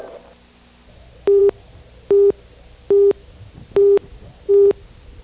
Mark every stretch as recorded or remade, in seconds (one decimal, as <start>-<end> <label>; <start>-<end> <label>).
0.0-5.2 recorded